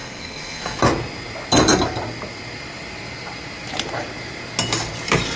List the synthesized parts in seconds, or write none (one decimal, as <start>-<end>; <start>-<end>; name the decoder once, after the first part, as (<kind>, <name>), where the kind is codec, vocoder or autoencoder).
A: 0.0-0.8 (codec, SNAC)